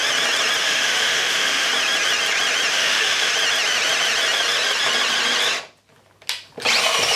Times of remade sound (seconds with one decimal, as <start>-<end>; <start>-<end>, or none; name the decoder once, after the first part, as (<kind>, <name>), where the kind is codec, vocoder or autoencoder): 0.6-1.7 (autoencoder, DAC-VAE); 2.7-3.3